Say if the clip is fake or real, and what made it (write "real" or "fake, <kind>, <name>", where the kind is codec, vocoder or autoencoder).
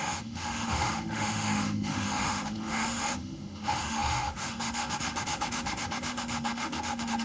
fake, autoencoder, DAC-VAE